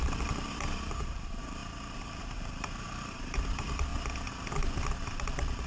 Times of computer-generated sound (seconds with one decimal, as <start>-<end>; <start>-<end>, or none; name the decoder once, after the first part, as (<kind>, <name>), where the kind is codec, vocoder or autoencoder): 0.0-3.9 (vocoder, BigVGAN v2)